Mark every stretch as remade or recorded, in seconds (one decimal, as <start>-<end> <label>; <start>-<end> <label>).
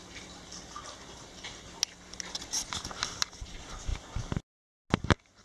0.0-5.4 recorded